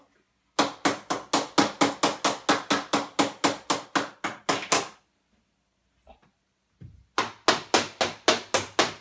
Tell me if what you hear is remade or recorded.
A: recorded